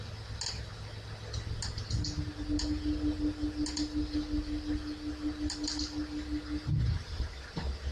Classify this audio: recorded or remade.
recorded